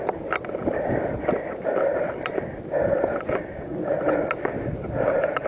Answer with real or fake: real